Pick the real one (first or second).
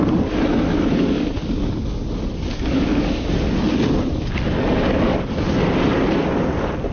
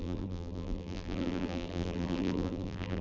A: first